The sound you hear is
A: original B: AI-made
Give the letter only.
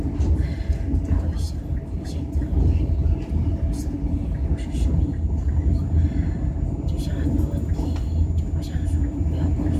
A